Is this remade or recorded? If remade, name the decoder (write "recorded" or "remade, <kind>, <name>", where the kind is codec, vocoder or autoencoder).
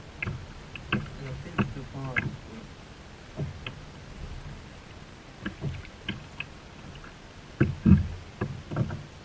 recorded